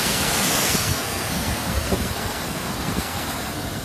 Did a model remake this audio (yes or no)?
yes